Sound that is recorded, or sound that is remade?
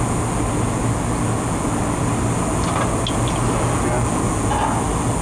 recorded